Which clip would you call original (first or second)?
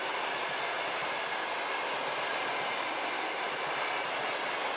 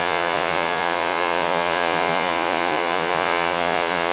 first